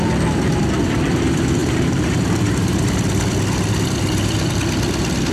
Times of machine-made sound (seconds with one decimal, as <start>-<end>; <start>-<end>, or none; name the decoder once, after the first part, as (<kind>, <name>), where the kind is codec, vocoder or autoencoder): 1.6-2.8 (vocoder, BigVGAN v2)